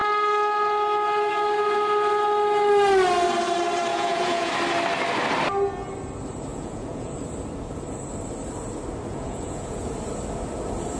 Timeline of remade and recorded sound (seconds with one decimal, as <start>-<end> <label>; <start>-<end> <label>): 0.0-3.9 recorded; 3.9-4.5 remade; 4.5-6.5 recorded; 6.5-7.1 remade; 7.1-9.1 recorded; 9.1-9.9 remade; 9.9-11.0 recorded